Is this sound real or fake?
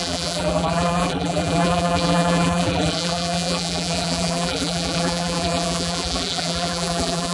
fake